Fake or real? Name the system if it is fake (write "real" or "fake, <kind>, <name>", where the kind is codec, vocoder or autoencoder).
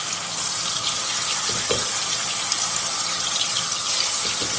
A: real